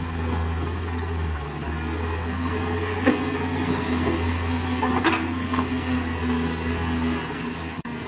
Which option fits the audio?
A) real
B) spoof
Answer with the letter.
B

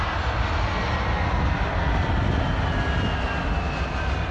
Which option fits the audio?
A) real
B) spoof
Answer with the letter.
A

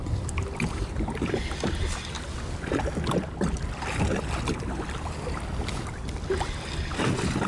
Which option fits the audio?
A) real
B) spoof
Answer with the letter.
A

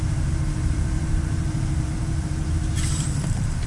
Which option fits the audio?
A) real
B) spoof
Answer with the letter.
B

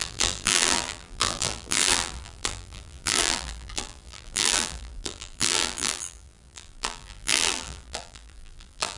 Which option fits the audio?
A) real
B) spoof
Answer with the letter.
B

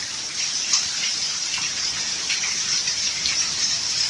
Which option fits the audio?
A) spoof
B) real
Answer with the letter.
A